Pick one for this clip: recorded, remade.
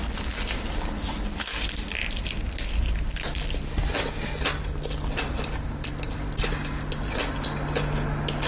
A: recorded